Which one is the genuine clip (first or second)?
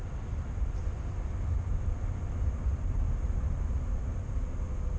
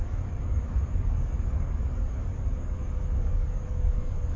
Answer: first